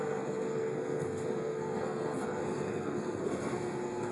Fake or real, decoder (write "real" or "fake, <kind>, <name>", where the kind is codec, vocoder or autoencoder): fake, codec, SNAC